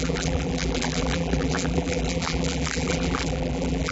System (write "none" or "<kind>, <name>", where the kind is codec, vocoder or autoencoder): vocoder, BigVGAN v2